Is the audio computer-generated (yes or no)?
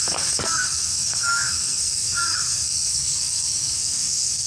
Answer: yes